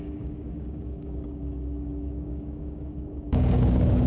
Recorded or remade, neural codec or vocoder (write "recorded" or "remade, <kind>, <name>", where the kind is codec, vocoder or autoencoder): remade, codec, DAC